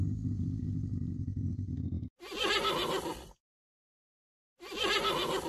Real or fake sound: real